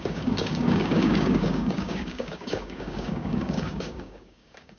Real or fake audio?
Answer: fake